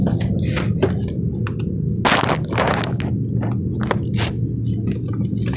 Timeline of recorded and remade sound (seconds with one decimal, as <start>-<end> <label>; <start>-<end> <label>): 0.0-5.6 recorded